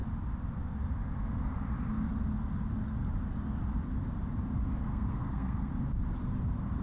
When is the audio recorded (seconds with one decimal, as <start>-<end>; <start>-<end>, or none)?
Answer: 0.0-4.9; 5.7-6.8